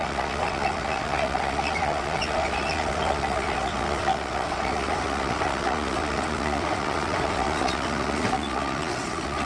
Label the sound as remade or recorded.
remade